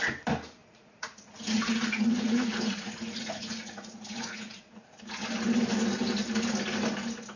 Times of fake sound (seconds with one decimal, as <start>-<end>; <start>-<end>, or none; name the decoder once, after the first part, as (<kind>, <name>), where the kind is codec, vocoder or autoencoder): 0.6-5.0 (vocoder, Vocos)